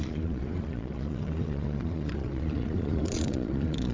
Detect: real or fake fake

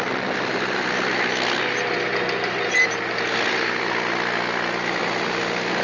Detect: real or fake real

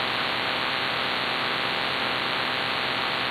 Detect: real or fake real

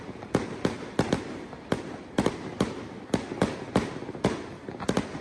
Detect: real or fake real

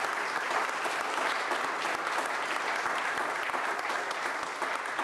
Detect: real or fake real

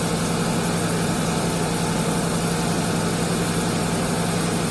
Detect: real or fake real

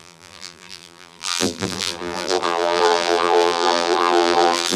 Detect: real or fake fake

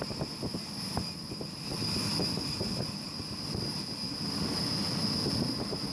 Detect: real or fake real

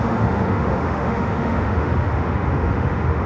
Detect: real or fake fake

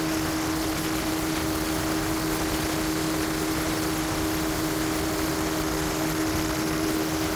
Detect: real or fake real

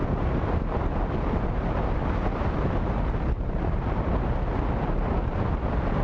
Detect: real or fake real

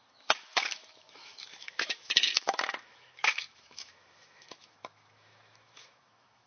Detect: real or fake fake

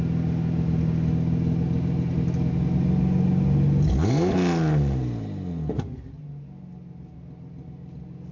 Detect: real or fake real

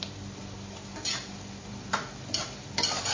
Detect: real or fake fake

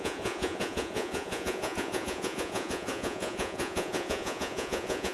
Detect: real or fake fake